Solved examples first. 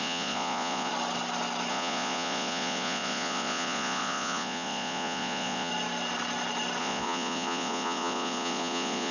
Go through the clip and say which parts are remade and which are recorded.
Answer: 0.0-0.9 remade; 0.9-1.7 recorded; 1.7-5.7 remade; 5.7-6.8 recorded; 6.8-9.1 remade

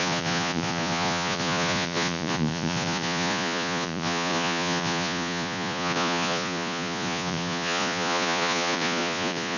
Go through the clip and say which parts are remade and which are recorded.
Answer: 0.0-9.6 remade

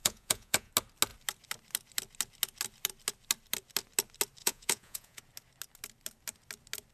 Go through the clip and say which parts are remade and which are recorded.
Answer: 0.0-0.7 remade; 0.7-4.4 recorded; 4.4-5.2 remade; 5.2-6.9 recorded

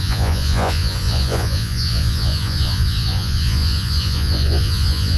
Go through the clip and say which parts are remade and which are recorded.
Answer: 0.0-5.2 remade

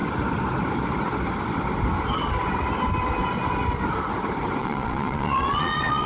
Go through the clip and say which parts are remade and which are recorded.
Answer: 0.0-4.6 recorded; 4.6-6.1 remade

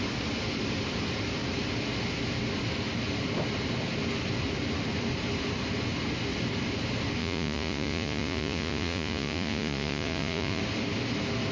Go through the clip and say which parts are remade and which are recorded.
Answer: 0.0-7.2 recorded; 7.2-10.6 remade; 10.6-11.5 recorded